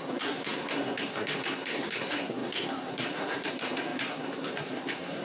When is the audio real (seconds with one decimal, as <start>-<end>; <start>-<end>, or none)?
none